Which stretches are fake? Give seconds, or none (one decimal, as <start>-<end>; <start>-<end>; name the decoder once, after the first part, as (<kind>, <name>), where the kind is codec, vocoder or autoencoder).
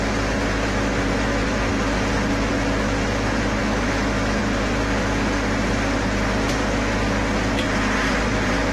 3.6-4.4 (autoencoder, DAC-VAE)